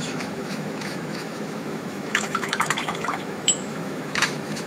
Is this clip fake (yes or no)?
yes